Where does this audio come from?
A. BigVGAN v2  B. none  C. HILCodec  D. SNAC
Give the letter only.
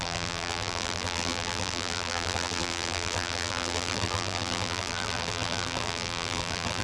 A